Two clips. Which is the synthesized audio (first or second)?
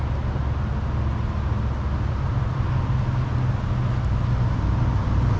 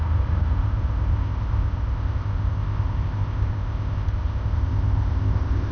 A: second